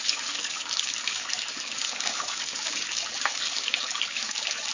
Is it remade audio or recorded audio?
remade